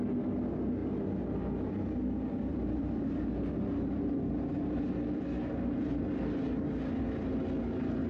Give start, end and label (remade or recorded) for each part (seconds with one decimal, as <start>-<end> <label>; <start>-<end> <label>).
0.0-0.8 recorded; 0.8-1.7 remade; 1.7-2.5 recorded; 2.5-6.1 remade; 6.1-8.1 recorded